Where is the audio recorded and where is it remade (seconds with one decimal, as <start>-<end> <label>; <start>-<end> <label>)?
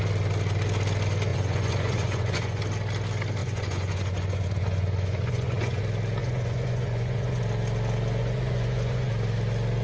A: 0.0-1.3 recorded; 1.3-2.6 remade; 2.6-3.4 recorded; 3.4-5.8 remade; 5.8-6.2 recorded; 6.2-7.4 remade; 7.4-8.2 recorded; 8.2-9.1 remade; 9.1-9.8 recorded